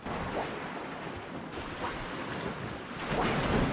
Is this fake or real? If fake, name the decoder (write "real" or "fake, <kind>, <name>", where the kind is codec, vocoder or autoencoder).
real